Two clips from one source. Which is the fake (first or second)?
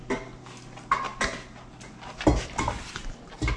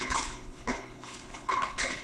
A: second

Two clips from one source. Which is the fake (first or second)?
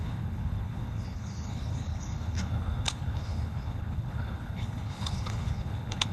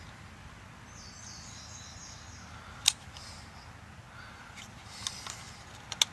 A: first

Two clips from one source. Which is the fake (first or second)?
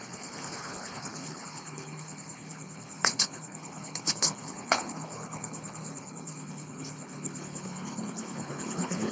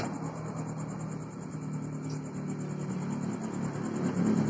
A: first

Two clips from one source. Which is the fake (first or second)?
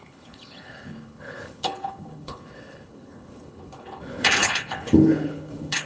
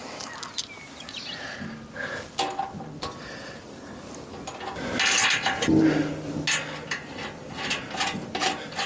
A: first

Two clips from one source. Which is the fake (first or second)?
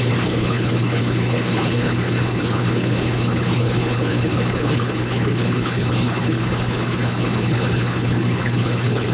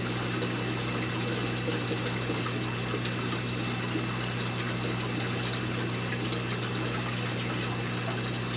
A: first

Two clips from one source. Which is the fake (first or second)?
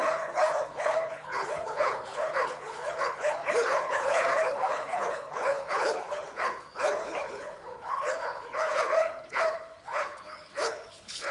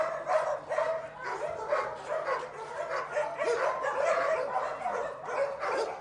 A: first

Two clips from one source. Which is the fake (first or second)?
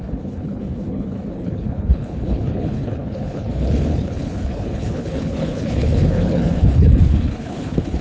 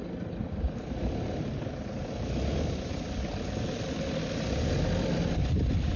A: first